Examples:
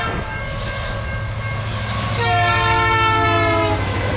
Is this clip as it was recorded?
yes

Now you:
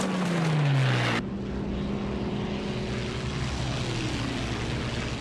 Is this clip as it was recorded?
yes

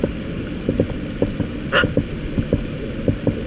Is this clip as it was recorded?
yes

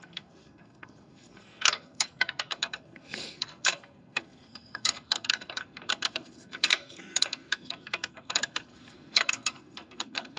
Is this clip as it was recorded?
no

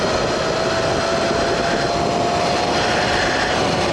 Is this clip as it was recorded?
yes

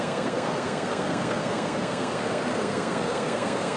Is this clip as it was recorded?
no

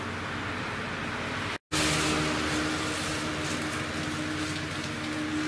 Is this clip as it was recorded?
yes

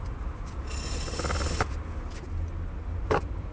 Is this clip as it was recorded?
yes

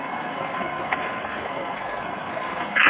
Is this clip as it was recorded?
no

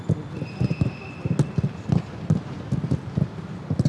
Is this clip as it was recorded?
yes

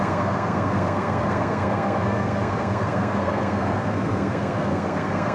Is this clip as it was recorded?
no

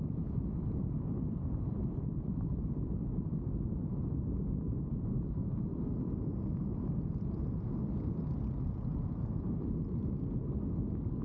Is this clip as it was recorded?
yes